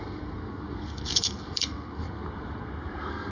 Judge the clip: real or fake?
fake